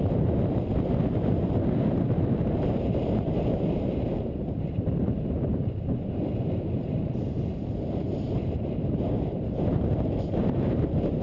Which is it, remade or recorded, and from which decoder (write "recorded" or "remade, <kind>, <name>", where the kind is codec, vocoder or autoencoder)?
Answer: remade, vocoder, BigVGAN v2